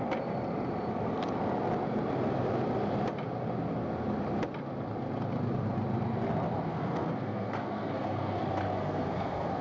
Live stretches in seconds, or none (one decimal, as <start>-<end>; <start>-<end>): 0.0-6.7; 8.4-8.8